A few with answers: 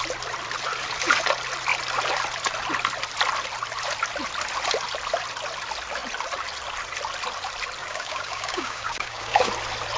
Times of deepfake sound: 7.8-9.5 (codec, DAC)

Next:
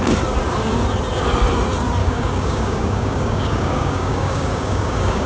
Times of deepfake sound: 2.0-5.3 (codec, DAC)

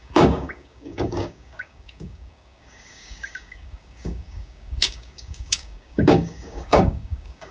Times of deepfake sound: 0.0-7.5 (codec, DAC)